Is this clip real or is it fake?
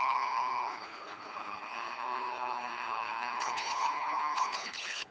fake